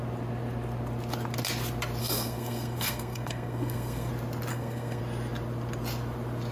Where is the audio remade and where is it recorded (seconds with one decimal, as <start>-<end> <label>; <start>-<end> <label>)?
0.0-2.0 recorded; 2.0-4.1 remade; 4.1-4.5 recorded; 4.5-5.0 remade; 5.0-6.5 recorded